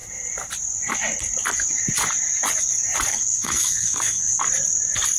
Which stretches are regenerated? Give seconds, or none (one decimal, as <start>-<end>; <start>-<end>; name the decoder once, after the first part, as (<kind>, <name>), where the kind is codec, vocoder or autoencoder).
3.1-4.4 (codec, SNAC)